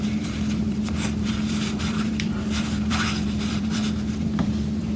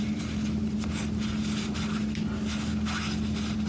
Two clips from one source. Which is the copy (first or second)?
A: first